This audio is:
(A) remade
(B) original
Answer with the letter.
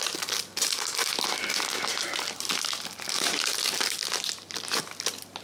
B